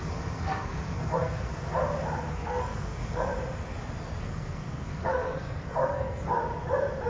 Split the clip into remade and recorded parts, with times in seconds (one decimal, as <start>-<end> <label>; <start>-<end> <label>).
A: 0.0-1.8 remade; 1.8-2.3 recorded; 2.3-3.3 remade; 3.3-4.2 recorded; 4.2-6.4 remade; 6.4-7.1 recorded